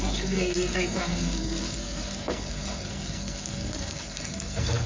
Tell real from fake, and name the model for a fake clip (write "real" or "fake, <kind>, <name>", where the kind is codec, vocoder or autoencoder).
fake, codec, SNAC